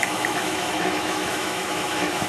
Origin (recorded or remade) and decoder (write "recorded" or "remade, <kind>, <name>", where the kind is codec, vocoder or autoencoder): remade, autoencoder, DAC-VAE